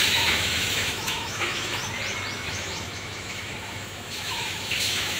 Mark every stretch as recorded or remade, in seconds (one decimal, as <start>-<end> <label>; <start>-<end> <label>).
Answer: 0.0-1.8 remade; 1.8-2.5 recorded; 2.5-5.2 remade